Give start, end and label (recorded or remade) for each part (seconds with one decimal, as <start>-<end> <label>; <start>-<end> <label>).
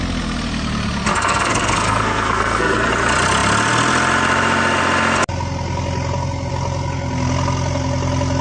0.0-1.1 recorded; 1.1-2.9 remade; 2.9-8.4 recorded